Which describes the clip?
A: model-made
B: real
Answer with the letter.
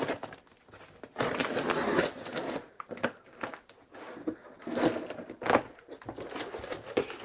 B